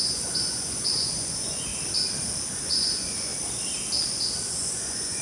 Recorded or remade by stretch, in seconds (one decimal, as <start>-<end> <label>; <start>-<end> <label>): 0.0-1.7 remade; 1.7-2.6 recorded; 2.6-3.3 remade; 3.3-4.5 recorded; 4.5-5.2 remade